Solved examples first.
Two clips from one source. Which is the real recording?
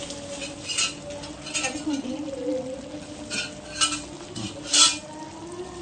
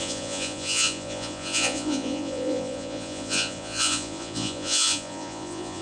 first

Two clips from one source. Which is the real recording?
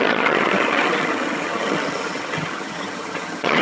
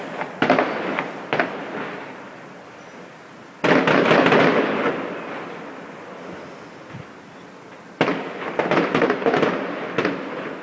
second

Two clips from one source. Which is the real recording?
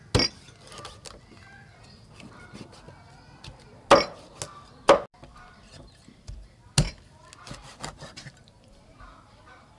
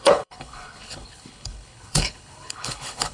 first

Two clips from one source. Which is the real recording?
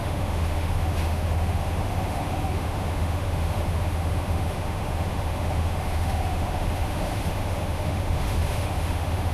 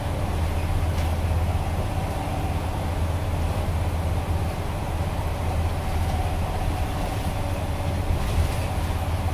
second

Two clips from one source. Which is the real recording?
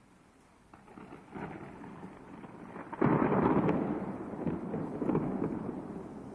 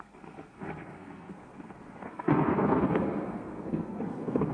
first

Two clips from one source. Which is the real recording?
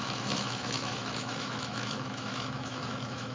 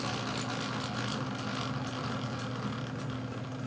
second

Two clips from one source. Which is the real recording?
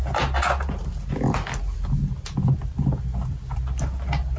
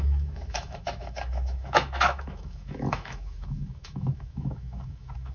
first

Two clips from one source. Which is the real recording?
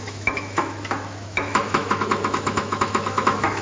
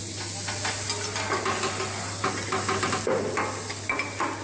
second